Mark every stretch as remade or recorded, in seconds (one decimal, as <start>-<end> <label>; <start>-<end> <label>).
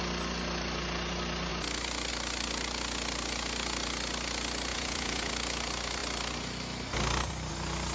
0.0-4.7 recorded; 4.7-5.3 remade; 5.3-7.9 recorded